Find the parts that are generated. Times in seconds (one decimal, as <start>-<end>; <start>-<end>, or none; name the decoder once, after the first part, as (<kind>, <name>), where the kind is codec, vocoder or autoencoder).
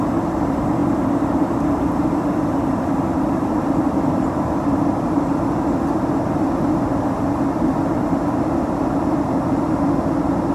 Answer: 0.8-4.3 (vocoder, BigVGAN v2)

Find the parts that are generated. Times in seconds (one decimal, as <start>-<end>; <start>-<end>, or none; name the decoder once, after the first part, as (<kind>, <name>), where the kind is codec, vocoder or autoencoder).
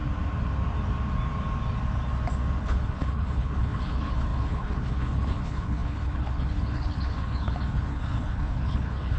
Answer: 2.6-9.2 (codec, HILCodec)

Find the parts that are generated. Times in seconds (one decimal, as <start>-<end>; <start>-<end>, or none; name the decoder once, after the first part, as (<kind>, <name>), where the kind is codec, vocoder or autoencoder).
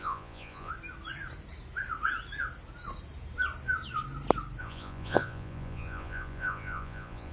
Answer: 0.0-0.7 (vocoder, Vocos); 4.6-7.3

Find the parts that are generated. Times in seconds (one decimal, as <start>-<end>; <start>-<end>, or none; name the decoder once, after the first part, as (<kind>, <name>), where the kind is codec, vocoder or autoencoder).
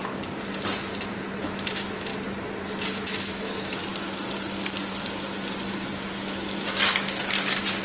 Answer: 1.4-2.1 (autoencoder, DAC-VAE); 2.9-3.8; 7.2-7.8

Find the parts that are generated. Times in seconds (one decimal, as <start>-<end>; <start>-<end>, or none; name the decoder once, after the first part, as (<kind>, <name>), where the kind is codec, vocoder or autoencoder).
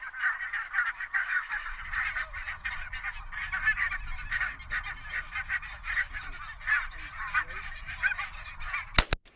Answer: 1.2-1.8 (codec, DAC)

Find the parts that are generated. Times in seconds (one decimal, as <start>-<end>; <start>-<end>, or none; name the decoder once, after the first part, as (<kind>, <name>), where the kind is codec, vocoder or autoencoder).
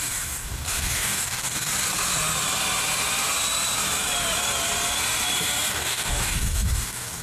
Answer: 0.0-1.7 (codec, DAC); 5.7-7.2